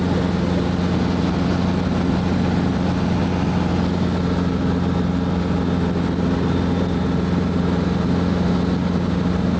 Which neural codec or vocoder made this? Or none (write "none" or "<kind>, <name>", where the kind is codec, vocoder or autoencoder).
none